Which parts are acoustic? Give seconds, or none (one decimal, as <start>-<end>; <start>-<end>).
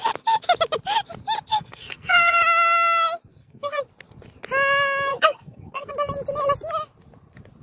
0.0-1.5; 2.4-3.3; 3.8-5.1; 5.9-7.6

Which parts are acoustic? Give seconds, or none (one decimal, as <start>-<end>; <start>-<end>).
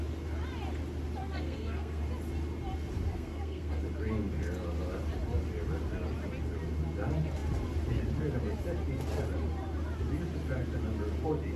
0.0-1.2; 2.0-3.1; 3.8-11.6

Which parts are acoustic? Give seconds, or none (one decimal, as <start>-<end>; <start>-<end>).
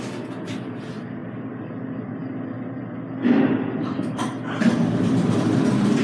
0.0-6.0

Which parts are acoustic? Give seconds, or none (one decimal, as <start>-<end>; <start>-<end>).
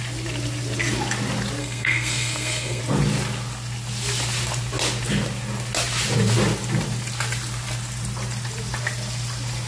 0.0-1.6; 2.8-9.7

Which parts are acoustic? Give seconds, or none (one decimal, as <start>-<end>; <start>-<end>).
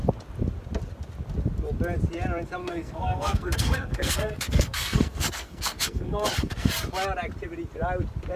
0.0-2.6; 6.7-8.4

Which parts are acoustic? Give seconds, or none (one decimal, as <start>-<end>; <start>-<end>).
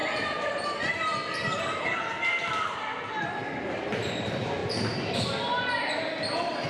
0.0-6.7